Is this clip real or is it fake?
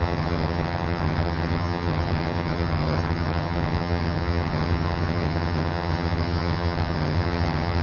fake